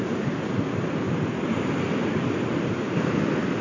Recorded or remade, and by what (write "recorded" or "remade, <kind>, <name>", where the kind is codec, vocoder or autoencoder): recorded